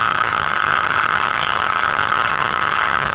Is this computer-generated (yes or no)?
yes